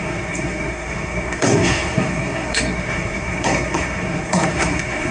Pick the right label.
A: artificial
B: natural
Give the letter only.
A